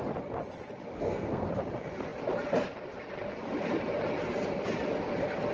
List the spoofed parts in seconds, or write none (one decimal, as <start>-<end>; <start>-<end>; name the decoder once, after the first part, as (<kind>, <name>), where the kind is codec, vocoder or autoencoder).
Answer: 0.9-1.5 (codec, SNAC)